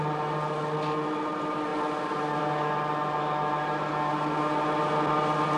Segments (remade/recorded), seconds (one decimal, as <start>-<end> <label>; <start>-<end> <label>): 0.0-5.6 recorded